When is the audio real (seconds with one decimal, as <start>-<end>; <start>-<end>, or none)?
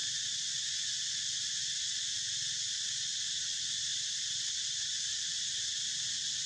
0.0-3.9; 6.0-6.5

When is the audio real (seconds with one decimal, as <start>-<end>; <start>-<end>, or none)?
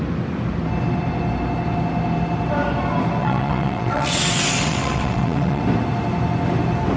0.0-3.2; 5.6-7.0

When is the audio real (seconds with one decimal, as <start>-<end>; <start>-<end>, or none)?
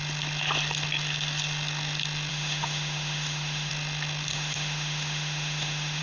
0.0-2.3; 3.7-4.3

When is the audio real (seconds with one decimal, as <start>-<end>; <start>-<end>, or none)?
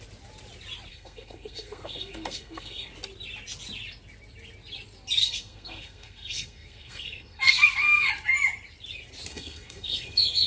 0.0-0.9; 2.9-5.2; 8.1-9.3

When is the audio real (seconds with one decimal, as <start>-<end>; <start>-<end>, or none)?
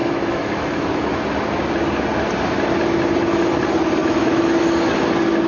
1.2-4.0; 4.6-5.5